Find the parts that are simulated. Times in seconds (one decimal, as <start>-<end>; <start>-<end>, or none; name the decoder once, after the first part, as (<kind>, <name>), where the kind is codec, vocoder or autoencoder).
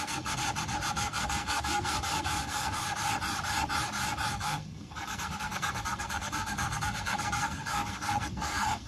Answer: 0.0-0.4 (codec, SNAC); 0.9-2.8; 4.3-8.9